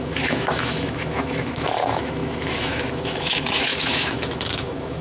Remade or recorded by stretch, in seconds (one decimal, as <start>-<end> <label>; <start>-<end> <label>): 0.0-5.0 remade